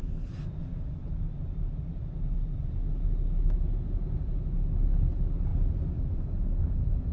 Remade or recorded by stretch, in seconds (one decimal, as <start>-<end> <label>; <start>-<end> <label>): 0.0-7.1 recorded